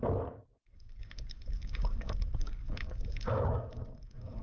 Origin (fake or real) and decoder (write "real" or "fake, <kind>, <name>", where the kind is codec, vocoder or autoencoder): fake, codec, DAC